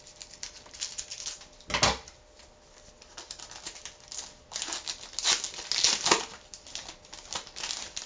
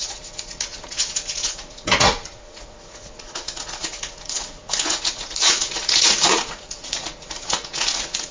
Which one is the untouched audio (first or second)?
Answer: first